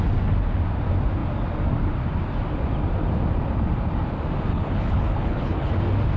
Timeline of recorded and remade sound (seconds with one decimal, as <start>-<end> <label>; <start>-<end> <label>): 0.0-4.5 recorded; 4.5-5.7 remade; 5.7-6.2 recorded